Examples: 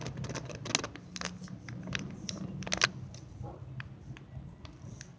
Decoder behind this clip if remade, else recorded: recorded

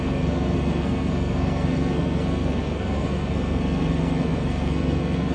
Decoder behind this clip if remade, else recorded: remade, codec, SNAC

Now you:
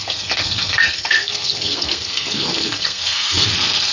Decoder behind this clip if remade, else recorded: remade, codec, SNAC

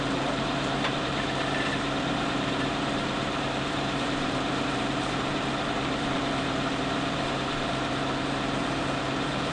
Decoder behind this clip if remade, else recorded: remade, vocoder, BigVGAN v2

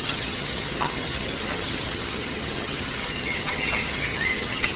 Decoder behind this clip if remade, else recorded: remade, vocoder, HiFi-GAN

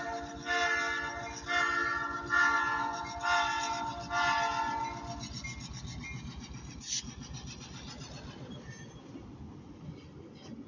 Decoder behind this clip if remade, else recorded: recorded